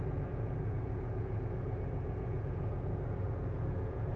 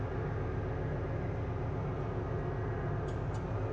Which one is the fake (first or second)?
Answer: first